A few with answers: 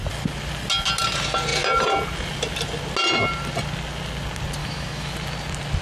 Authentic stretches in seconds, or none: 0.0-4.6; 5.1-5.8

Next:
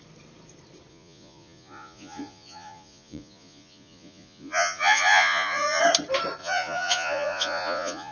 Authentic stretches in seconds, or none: 0.0-0.9; 5.8-6.4